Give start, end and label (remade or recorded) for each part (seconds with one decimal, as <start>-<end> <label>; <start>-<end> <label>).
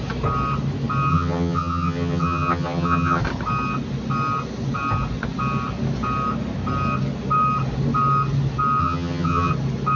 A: 0.0-1.1 recorded; 1.1-3.2 remade; 3.2-8.8 recorded; 8.8-9.5 remade; 9.5-10.0 recorded